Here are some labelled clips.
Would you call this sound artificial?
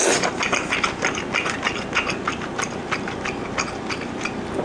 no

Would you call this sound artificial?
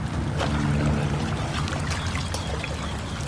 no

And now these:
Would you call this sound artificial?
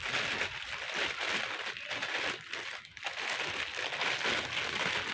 no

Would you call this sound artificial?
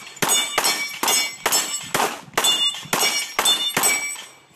no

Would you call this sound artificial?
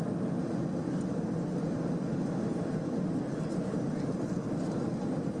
no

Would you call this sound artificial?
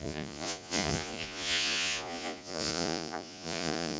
yes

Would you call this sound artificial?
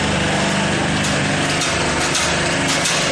no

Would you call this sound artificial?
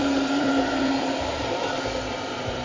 yes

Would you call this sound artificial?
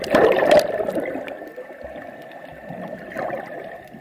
yes